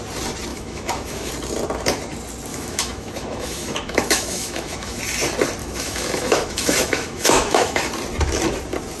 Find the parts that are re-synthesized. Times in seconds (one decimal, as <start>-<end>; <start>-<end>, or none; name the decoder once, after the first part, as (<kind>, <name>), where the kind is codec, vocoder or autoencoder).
0.5-1.3 (autoencoder, DAC-VAE); 2.5-5.0; 5.6-7.9